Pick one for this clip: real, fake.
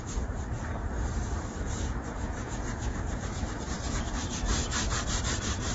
fake